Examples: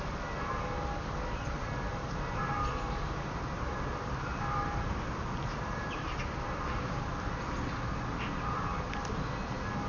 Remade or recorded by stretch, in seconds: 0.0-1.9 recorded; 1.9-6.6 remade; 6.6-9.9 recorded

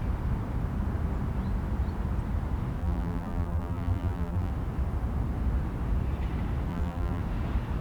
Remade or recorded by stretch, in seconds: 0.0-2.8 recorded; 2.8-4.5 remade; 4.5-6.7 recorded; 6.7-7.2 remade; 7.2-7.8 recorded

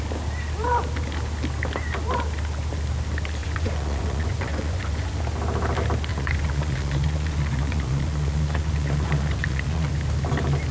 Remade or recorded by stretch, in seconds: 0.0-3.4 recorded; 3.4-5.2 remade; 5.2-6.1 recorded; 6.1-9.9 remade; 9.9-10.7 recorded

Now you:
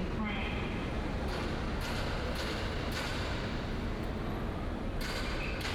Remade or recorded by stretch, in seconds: 0.0-5.7 recorded